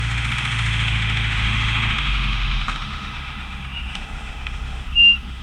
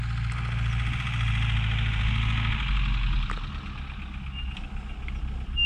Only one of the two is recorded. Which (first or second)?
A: second